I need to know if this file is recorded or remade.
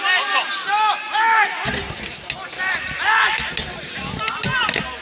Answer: recorded